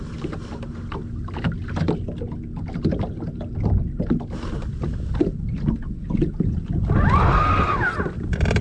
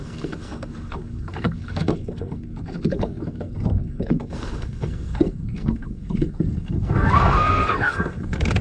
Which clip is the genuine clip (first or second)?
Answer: first